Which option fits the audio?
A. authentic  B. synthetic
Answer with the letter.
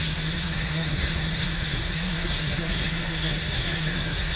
B